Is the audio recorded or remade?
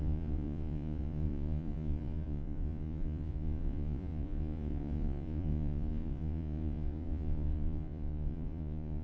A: remade